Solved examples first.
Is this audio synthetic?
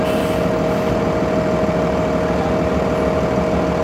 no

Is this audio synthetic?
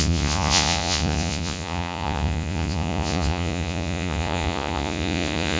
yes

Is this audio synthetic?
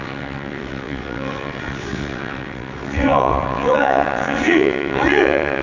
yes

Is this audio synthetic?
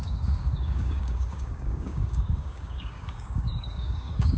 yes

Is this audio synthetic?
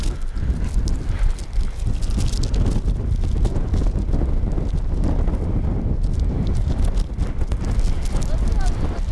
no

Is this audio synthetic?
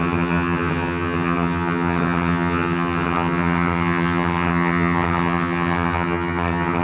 yes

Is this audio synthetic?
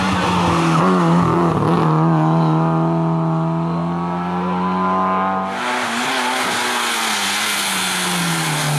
no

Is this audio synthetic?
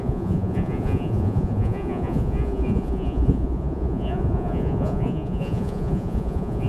yes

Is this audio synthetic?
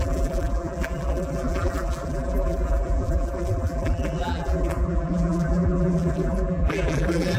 yes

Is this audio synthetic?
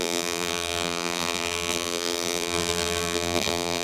yes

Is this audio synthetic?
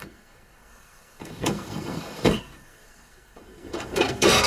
yes